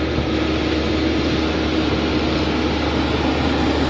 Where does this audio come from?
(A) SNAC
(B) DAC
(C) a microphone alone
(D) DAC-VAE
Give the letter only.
C